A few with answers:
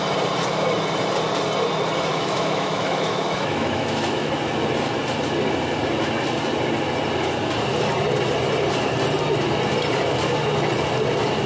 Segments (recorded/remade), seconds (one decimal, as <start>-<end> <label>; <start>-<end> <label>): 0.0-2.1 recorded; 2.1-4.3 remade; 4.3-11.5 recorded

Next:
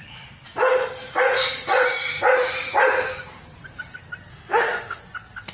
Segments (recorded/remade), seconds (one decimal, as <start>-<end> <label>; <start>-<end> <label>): 0.0-4.3 recorded; 4.3-5.0 remade; 5.0-5.5 recorded

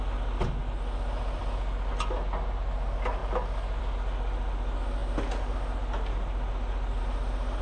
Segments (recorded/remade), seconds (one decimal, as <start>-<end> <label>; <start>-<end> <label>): 0.0-7.6 recorded